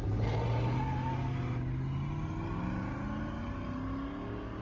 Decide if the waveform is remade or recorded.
recorded